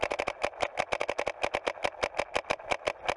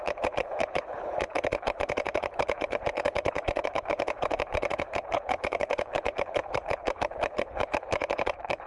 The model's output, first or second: second